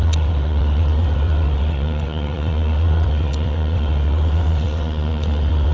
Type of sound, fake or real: fake